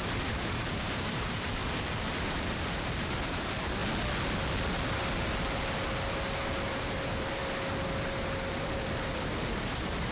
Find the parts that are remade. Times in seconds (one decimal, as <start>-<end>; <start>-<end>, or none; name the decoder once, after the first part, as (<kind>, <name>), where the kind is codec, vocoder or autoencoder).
0.0-3.8 (vocoder, BigVGAN v2); 6.7-7.4; 8.1-10.1